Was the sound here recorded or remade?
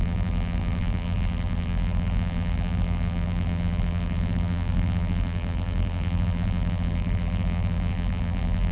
remade